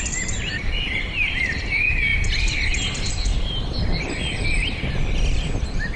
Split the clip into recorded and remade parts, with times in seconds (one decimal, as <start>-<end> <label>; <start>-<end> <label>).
0.0-2.1 remade; 2.1-3.1 recorded; 3.1-6.0 remade